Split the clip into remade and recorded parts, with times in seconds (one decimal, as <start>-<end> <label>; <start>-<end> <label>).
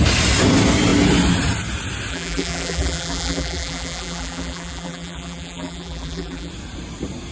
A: 0.0-2.1 recorded; 2.1-6.5 remade; 6.5-7.3 recorded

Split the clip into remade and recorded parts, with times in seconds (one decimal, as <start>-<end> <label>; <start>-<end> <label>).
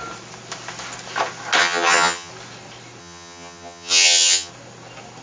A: 0.0-1.6 recorded; 1.6-2.3 remade; 2.3-3.0 recorded; 3.0-4.5 remade; 4.5-5.2 recorded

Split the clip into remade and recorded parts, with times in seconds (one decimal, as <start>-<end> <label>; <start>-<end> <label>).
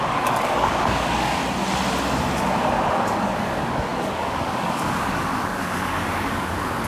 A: 0.0-1.4 remade; 1.4-2.9 recorded; 2.9-6.9 remade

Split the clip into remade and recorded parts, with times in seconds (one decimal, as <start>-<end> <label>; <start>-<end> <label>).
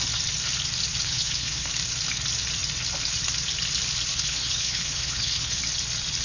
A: 0.0-0.9 recorded; 0.9-1.7 remade; 1.7-4.1 recorded; 4.1-5.6 remade; 5.6-6.2 recorded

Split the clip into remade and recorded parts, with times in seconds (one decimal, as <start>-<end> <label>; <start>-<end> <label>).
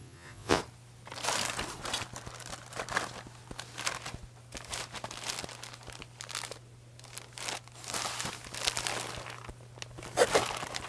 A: 0.0-0.6 remade; 0.6-10.9 recorded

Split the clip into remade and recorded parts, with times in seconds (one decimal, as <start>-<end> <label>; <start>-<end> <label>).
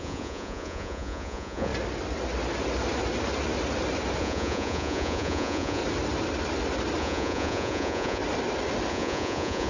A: 0.0-1.7 remade; 1.7-4.2 recorded; 4.2-5.8 remade; 5.8-7.0 recorded; 7.0-8.2 remade; 8.2-8.9 recorded; 8.9-9.7 remade